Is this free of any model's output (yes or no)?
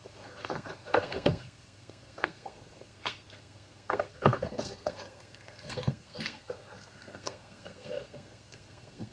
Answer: no